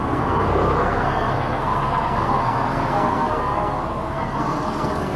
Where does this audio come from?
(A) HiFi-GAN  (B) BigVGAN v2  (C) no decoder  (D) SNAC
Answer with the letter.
D